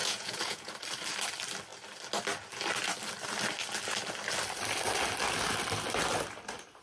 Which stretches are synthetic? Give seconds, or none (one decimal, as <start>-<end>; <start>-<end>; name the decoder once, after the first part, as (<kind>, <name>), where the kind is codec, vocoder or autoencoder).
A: 0.0-0.7 (vocoder, Vocos)